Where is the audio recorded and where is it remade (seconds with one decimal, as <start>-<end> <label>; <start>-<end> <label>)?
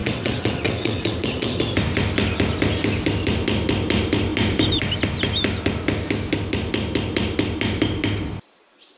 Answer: 0.0-1.6 remade; 1.6-9.0 recorded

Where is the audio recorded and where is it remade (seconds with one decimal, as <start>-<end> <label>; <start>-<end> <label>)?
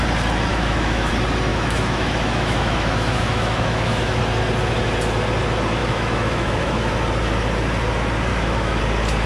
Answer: 0.0-0.5 recorded; 0.5-1.1 remade; 1.1-1.5 recorded; 1.5-4.2 remade; 4.2-5.8 recorded; 5.8-6.9 remade; 6.9-8.3 recorded; 8.3-8.8 remade; 8.8-9.3 recorded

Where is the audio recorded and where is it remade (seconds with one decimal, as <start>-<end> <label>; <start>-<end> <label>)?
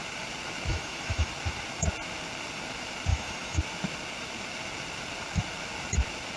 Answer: 0.0-0.7 recorded; 0.7-1.3 remade; 1.3-3.1 recorded; 3.1-3.6 remade; 3.6-6.4 recorded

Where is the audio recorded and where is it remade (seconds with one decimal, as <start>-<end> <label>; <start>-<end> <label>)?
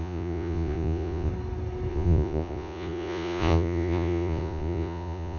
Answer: 0.0-1.3 remade; 1.3-1.9 recorded; 1.9-5.4 remade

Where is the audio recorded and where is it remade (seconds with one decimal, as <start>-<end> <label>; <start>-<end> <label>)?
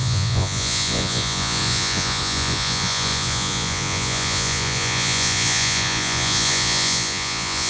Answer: 0.0-7.7 remade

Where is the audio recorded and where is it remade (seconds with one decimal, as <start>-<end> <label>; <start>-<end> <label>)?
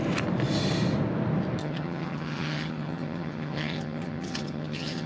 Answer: 0.0-1.6 recorded; 1.6-5.1 remade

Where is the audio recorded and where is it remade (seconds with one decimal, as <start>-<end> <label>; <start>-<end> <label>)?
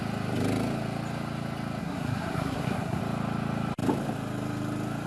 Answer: 0.0-1.8 recorded; 1.8-3.0 remade; 3.0-5.1 recorded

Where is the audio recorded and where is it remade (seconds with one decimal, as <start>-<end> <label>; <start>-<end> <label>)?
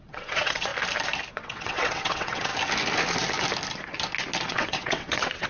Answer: 0.0-0.7 remade; 0.7-1.3 recorded; 1.3-2.5 remade; 2.5-4.5 recorded; 4.5-5.5 remade